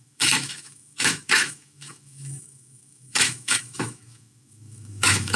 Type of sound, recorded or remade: remade